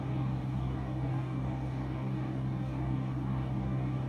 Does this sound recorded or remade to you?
remade